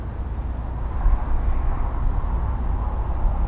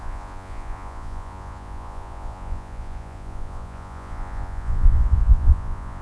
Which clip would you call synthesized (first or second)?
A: second